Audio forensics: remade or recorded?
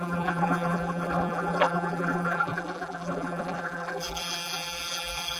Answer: remade